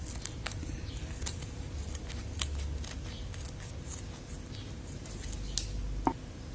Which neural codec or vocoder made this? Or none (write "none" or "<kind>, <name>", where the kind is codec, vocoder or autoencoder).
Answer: none